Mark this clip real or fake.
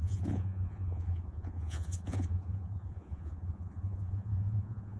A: fake